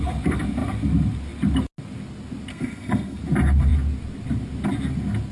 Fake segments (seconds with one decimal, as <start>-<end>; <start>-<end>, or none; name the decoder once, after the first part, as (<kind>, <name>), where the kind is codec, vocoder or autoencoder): 2.5-3.2 (codec, SNAC)